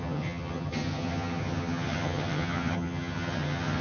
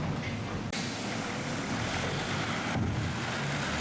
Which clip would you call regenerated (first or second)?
first